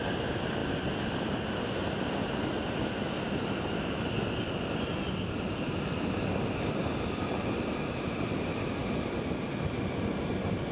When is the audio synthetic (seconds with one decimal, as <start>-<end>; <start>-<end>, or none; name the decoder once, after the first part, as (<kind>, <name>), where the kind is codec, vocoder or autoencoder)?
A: none